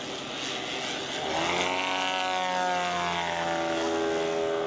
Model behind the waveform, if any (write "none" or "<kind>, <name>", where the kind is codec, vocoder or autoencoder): none